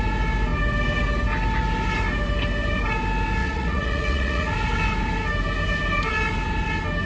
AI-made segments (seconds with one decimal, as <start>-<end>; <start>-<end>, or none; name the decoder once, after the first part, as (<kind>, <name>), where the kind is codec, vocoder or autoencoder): 3.4-4.5 (vocoder, Vocos)